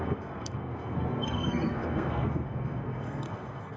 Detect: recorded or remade remade